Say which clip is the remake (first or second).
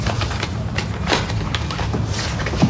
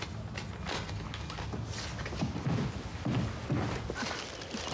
first